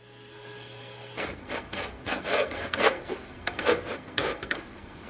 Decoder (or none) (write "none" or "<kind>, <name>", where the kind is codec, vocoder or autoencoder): codec, SNAC